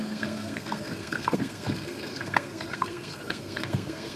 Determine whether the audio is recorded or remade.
remade